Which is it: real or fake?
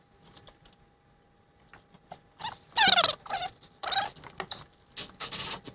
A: real